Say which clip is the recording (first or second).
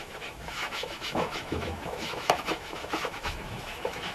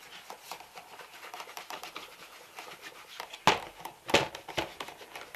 second